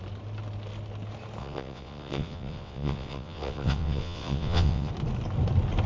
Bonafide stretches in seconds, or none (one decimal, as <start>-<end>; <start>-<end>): 0.0-1.4; 4.9-5.9